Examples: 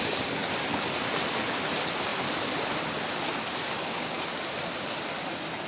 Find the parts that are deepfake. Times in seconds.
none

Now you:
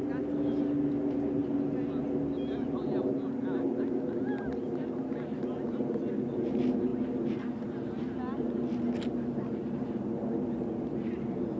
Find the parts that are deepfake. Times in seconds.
none

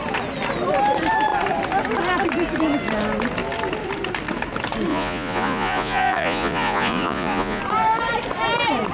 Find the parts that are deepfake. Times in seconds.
4.9-7.6 (vocoder, Vocos)

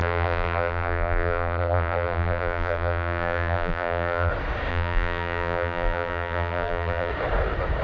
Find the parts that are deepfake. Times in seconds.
0.0-4.3 (vocoder, BigVGAN v2); 4.7-7.1